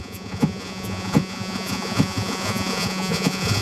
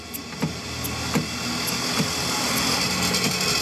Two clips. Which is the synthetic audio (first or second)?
first